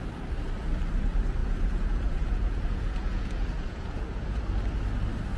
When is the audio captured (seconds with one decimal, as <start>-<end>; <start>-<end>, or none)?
0.0-1.4; 4.4-5.4

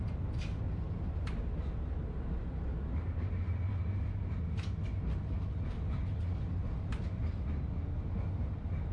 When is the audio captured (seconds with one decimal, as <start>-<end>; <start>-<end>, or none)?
0.0-8.9

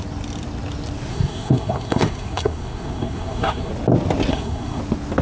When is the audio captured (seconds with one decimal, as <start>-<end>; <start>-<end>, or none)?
0.0-1.1; 3.7-4.3; 4.8-5.2

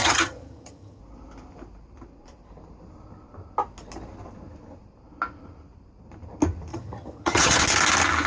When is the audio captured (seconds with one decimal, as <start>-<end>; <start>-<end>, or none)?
1.0-6.7; 7.6-8.3